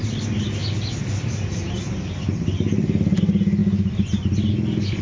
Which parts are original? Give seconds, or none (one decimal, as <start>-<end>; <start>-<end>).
0.0-5.0